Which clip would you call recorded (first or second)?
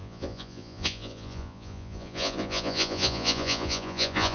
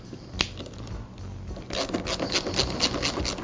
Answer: second